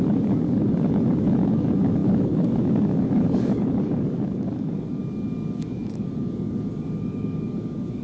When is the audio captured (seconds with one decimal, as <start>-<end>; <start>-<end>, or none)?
5.0-5.6